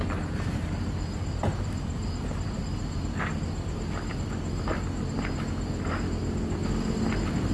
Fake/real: real